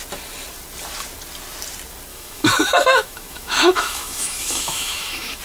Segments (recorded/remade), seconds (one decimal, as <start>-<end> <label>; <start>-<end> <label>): 0.0-2.1 recorded; 2.1-5.4 remade